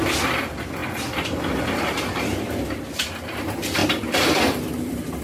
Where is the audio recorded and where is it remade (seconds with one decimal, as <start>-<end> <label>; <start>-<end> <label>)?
0.0-3.8 recorded; 3.8-5.2 remade